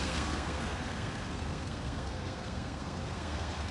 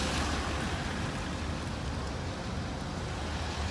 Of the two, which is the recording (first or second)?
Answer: second